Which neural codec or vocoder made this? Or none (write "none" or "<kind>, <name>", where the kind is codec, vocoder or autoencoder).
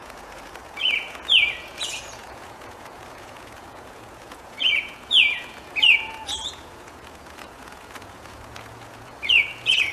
vocoder, Vocos